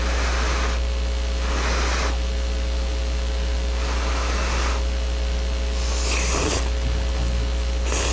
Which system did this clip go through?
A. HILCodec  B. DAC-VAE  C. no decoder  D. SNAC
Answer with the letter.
C